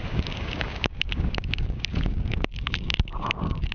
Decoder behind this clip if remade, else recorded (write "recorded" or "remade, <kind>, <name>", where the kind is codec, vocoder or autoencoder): remade, codec, DAC